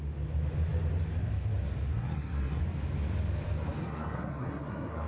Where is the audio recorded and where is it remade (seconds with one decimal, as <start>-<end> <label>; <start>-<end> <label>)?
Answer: 0.0-1.9 recorded; 1.9-2.6 remade; 2.6-3.8 recorded; 3.8-5.1 remade